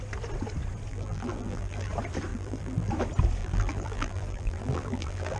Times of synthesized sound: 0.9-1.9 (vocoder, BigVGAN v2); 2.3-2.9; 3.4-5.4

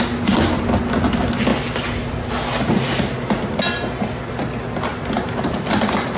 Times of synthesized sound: 4.9-5.8 (vocoder, BigVGAN v2)

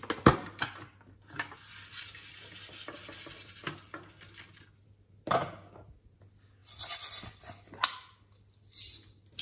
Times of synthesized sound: none

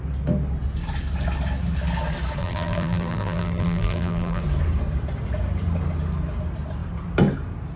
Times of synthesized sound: 2.4-4.4 (vocoder, BigVGAN v2)

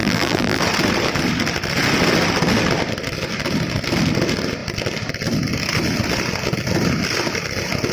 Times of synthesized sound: 0.0-0.6 (vocoder, BigVGAN v2)

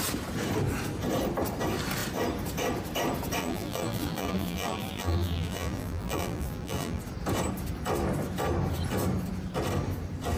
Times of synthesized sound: 3.4-7.0 (vocoder, BigVGAN v2)